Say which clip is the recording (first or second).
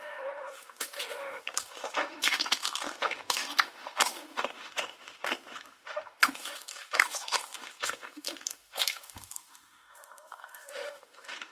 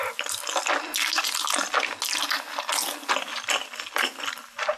second